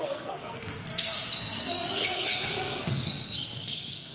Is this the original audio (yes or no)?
no